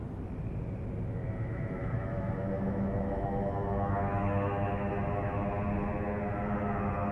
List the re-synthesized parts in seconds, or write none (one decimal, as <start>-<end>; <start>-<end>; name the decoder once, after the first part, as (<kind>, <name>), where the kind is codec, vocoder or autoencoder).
1.2-5.5 (autoencoder, DAC-VAE)